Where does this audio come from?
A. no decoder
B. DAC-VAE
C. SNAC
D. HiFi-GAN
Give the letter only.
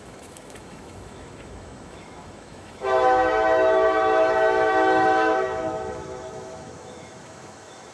B